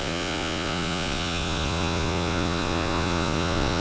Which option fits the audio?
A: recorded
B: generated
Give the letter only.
B